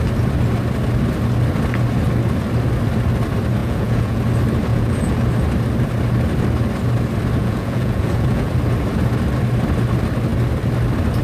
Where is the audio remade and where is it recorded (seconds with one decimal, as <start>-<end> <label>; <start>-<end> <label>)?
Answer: 0.0-3.6 recorded; 3.6-4.2 remade; 4.2-4.7 recorded; 4.7-5.3 remade; 5.3-7.4 recorded; 7.4-8.5 remade; 8.5-11.2 recorded

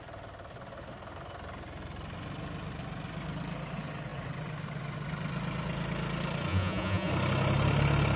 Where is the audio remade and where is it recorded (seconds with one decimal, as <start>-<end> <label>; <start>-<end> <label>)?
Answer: 0.0-6.5 recorded; 6.5-7.1 remade; 7.1-8.2 recorded